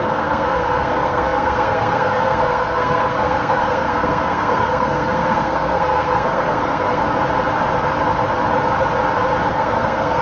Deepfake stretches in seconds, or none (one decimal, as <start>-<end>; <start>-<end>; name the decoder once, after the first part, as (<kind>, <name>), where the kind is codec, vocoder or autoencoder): 0.0-7.0 (codec, SNAC); 9.5-10.2